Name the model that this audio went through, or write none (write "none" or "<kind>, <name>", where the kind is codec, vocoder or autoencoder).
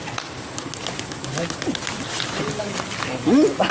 none